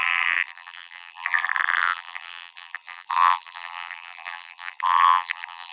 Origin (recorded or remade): remade